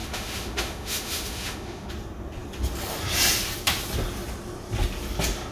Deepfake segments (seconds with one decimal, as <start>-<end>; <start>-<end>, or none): 0.0-1.9